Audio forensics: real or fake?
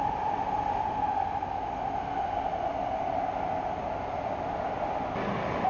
real